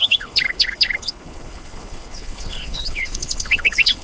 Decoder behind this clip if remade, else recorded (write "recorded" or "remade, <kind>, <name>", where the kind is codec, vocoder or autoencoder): remade, codec, HILCodec